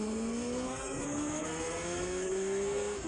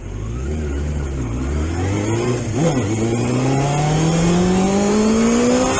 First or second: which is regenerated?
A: first